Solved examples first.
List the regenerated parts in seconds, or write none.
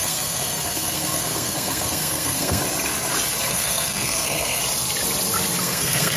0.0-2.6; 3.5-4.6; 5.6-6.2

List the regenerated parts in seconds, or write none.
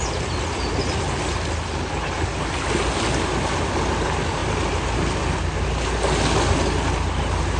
none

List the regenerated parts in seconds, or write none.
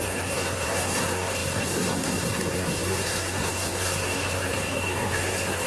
0.0-5.7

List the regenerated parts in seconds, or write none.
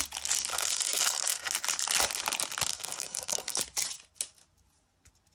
0.5-1.5; 2.7-3.6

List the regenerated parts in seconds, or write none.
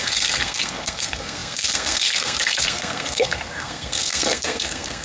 0.0-5.0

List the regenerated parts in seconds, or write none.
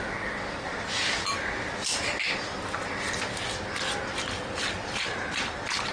none